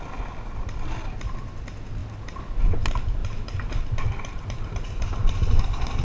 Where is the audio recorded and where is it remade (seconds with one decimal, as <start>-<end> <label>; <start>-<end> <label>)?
0.0-3.2 recorded; 3.2-5.6 remade; 5.6-6.0 recorded